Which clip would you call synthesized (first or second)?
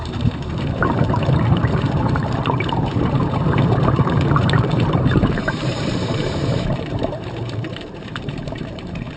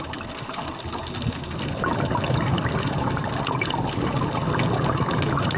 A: first